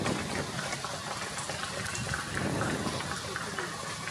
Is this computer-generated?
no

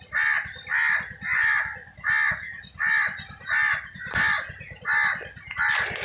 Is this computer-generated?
no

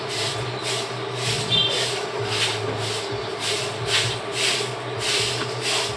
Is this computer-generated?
no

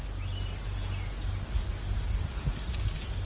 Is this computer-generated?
no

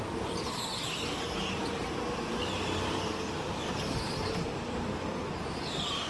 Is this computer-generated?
no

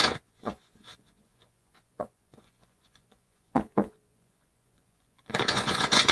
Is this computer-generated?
yes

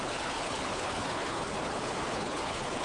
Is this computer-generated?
yes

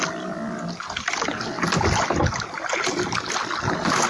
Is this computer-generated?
no